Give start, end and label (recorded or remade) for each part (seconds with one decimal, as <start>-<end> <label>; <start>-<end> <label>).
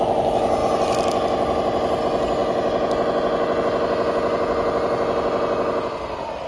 0.0-6.5 recorded